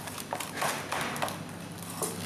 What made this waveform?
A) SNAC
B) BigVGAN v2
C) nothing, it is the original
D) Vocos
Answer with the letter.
C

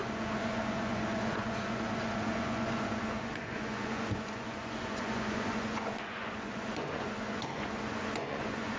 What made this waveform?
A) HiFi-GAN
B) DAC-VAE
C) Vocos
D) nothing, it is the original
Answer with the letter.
C